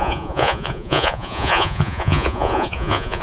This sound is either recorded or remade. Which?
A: remade